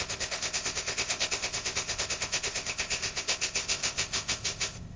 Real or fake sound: fake